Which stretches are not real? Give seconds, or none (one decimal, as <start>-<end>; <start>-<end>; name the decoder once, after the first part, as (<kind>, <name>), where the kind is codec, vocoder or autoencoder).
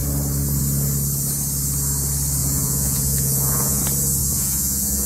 2.4-3.8 (vocoder, Vocos); 4.2-5.1